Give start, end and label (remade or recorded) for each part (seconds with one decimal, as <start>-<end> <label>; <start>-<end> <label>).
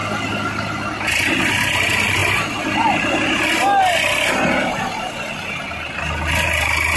0.0-7.0 recorded